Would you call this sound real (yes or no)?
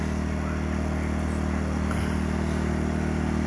yes